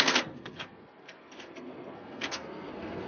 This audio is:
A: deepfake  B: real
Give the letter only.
A